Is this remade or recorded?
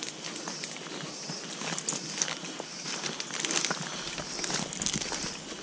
recorded